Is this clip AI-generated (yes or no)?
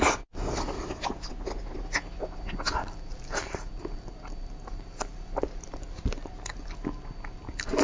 no